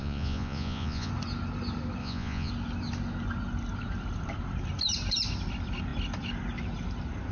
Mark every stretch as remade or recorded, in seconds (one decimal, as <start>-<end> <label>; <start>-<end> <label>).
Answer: 0.0-1.1 remade; 1.1-2.0 recorded; 2.0-2.5 remade; 2.5-7.3 recorded